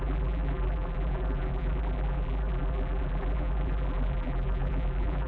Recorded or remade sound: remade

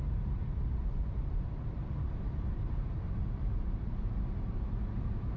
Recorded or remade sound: remade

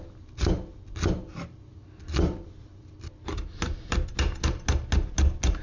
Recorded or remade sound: recorded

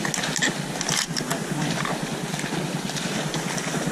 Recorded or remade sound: recorded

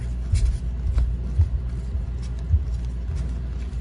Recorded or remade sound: recorded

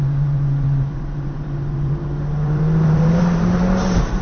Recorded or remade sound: remade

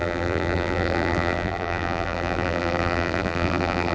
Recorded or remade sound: remade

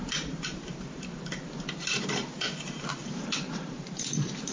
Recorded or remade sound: remade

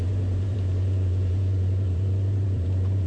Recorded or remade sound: remade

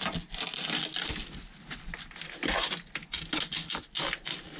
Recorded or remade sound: recorded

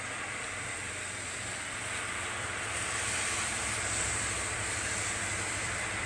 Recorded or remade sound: remade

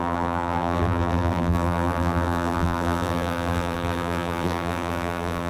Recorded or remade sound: remade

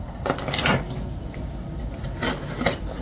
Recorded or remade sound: recorded